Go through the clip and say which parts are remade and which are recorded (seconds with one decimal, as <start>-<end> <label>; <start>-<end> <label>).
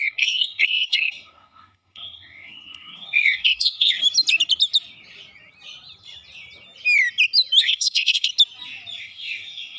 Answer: 0.0-4.0 remade; 4.0-7.6 recorded; 7.6-8.3 remade; 8.3-9.0 recorded; 9.0-9.8 remade